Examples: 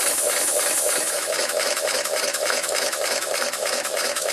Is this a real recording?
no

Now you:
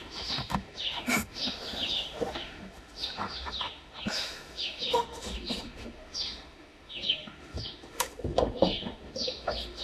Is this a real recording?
no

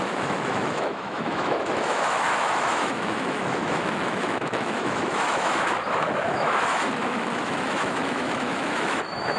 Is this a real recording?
no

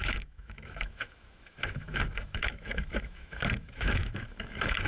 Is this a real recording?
no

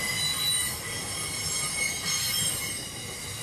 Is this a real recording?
yes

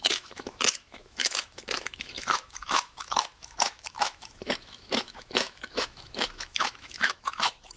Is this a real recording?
no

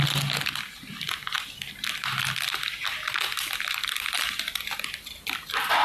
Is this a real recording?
yes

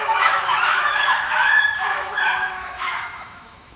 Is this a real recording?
no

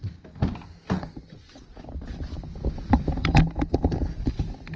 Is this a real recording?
yes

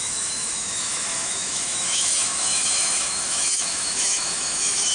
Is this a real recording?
no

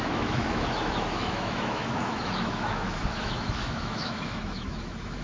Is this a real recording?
no